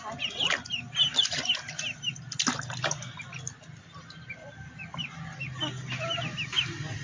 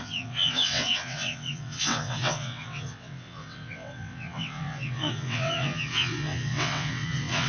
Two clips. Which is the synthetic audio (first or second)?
second